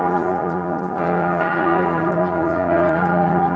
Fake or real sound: fake